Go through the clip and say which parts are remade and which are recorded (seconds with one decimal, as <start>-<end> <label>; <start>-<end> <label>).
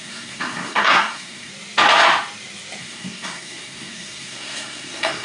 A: 0.0-1.5 remade; 1.5-2.8 recorded; 2.8-5.2 remade